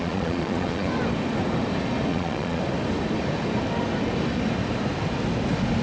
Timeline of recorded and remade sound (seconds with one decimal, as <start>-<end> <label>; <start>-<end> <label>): 0.0-0.9 remade; 0.9-2.1 recorded; 2.1-2.6 remade; 2.6-5.8 recorded